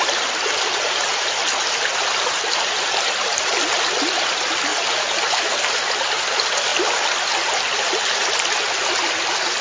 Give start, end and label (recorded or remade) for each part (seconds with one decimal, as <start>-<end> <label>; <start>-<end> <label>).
0.0-9.6 recorded